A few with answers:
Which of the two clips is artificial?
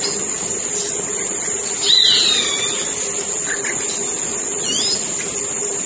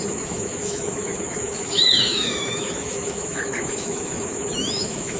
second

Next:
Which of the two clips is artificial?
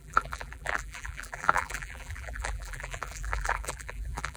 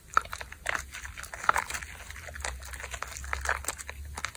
first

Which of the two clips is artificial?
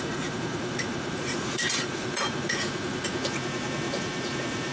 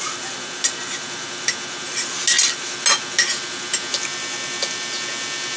first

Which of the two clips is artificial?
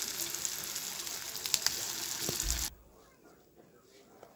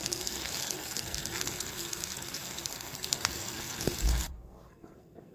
second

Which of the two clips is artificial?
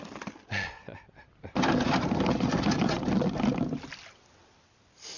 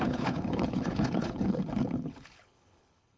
second